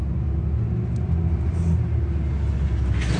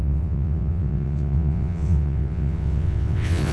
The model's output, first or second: second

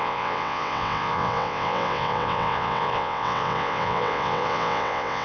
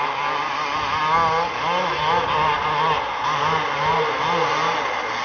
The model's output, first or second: first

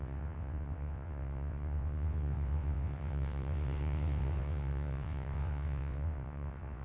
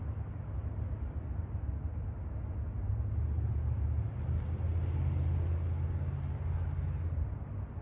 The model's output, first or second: first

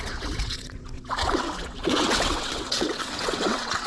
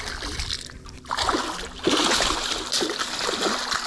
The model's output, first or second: first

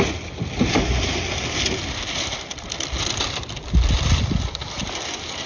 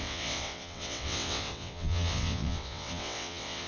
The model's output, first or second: second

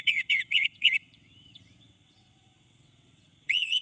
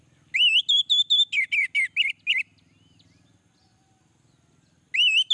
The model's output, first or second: first